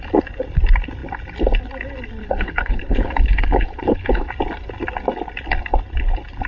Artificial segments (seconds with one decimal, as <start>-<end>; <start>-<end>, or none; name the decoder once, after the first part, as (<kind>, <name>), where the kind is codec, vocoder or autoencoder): 2.2-4.3 (codec, HILCodec)